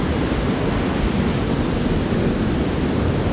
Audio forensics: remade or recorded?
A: recorded